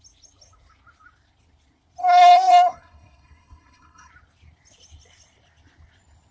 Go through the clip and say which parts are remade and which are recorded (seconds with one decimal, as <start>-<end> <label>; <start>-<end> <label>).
0.0-2.0 recorded; 2.0-4.1 remade; 4.1-6.3 recorded